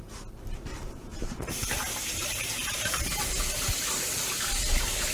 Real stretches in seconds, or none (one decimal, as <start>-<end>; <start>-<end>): 0.0-0.7; 1.3-2.7; 3.2-5.1